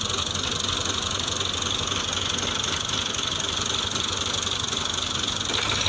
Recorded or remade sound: recorded